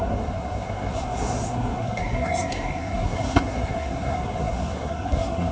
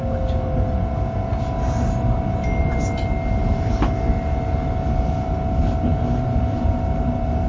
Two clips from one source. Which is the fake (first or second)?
first